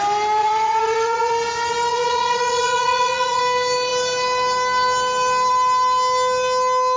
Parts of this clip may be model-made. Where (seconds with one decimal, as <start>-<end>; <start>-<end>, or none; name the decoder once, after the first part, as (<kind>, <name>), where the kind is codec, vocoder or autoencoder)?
0.4-1.3 (vocoder, Vocos); 1.9-3.4